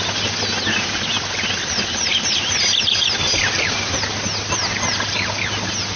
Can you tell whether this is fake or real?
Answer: real